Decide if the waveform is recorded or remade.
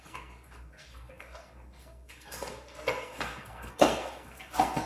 remade